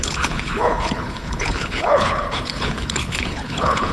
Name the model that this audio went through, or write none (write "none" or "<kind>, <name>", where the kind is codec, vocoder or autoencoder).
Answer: codec, HILCodec